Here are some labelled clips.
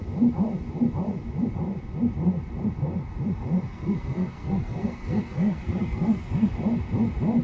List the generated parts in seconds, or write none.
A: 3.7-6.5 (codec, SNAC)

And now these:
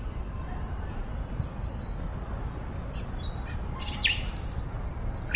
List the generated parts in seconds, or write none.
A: none

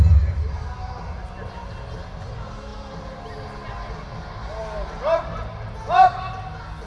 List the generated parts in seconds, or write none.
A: none

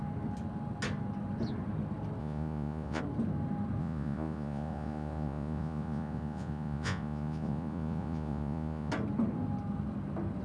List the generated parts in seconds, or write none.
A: 2.2-3.0 (vocoder, Vocos); 3.8-8.9

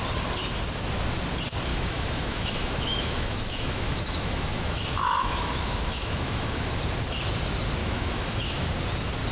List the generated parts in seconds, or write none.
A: 1.7-6.8 (autoencoder, DAC-VAE); 7.8-8.7

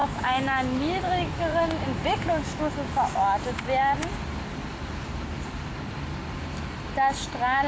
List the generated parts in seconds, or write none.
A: 0.0-2.6 (autoencoder, DAC-VAE)

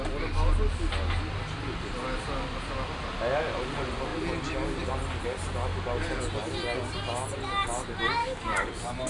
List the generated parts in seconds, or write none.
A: 8.2-8.7 (codec, DAC)